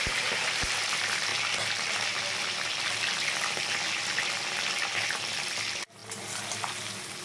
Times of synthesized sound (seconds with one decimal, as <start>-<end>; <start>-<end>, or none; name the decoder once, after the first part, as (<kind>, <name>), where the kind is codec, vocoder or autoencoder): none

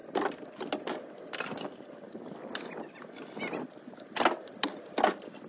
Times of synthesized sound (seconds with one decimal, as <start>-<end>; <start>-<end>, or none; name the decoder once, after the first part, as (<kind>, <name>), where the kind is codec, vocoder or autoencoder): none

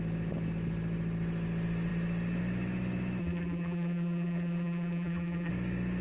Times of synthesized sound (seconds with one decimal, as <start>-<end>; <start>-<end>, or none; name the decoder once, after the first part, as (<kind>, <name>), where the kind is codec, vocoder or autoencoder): 3.2-5.5 (vocoder, BigVGAN v2)